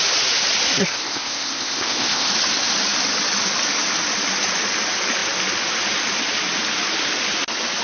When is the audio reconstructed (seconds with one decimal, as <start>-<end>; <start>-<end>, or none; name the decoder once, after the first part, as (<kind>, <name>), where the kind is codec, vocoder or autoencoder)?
0.8-2.3 (codec, ZipCodec)